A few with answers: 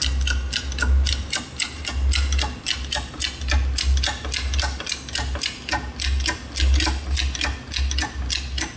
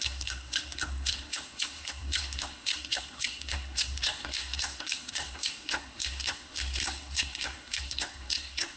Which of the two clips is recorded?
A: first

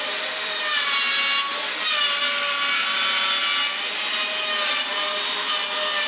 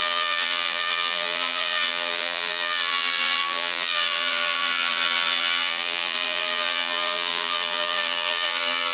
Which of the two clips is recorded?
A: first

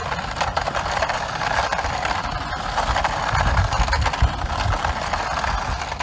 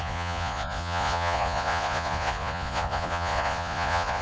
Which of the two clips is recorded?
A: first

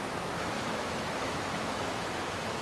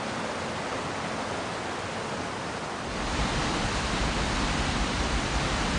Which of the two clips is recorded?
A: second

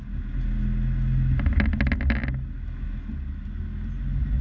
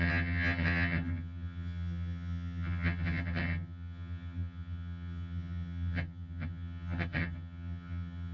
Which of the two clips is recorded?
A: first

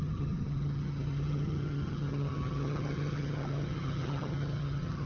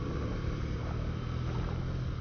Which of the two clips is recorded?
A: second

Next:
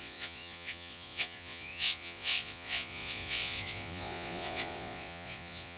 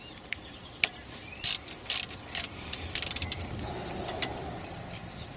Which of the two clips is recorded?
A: second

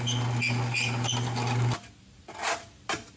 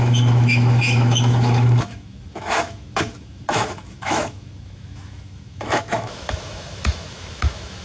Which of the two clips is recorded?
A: first